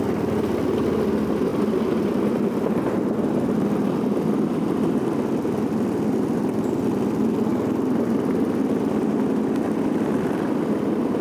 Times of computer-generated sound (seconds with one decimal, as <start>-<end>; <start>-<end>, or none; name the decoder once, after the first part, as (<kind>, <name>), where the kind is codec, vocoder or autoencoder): none